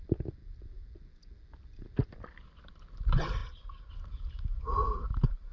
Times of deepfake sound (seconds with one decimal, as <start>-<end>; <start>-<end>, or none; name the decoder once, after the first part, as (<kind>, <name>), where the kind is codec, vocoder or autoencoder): 0.0-0.4 (vocoder, BigVGAN v2); 2.1-3.4; 3.9-5.5